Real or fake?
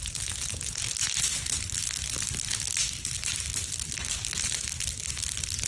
real